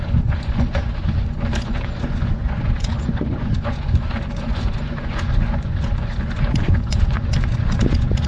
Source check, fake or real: fake